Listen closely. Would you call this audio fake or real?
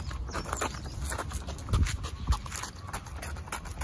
real